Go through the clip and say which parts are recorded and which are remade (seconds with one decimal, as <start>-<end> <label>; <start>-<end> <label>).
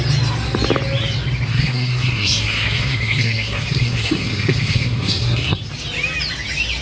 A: 0.0-1.5 recorded; 1.5-5.6 remade; 5.6-6.8 recorded